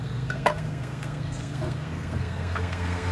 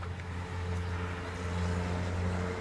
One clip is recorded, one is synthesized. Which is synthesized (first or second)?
first